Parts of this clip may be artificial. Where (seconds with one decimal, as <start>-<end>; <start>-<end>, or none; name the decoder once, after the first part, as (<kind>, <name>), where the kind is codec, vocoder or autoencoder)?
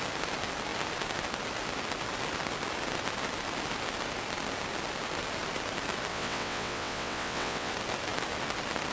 6.1-7.7 (vocoder, WaveNeXt)